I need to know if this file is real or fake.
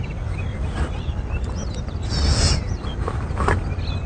real